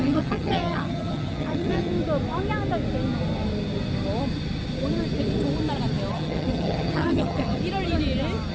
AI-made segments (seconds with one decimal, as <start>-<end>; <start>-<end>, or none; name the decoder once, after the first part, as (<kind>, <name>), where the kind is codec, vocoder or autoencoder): 0.0-1.9 (vocoder, HiFi-GAN); 6.1-7.6